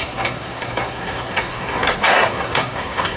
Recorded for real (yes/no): no